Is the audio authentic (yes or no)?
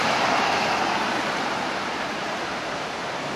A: no